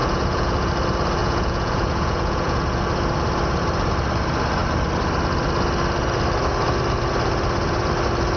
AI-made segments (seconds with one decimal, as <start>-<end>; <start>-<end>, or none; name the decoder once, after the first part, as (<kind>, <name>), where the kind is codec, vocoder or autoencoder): 0.0-0.7 (vocoder, Vocos); 1.2-2.6